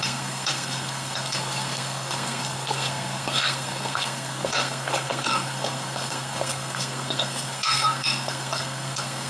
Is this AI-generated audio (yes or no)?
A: yes